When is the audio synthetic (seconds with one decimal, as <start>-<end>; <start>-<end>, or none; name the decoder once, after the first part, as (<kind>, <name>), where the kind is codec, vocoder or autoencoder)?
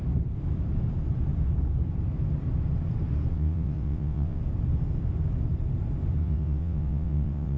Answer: 3.3-4.4 (vocoder, WaveNeXt); 6.2-7.6